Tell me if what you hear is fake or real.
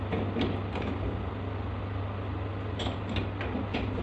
real